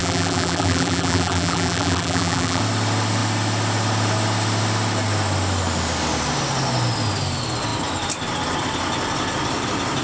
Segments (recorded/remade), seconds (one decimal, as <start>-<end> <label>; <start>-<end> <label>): 0.0-2.6 remade; 2.6-10.0 recorded